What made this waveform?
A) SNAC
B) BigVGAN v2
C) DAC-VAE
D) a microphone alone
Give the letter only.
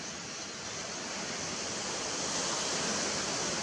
D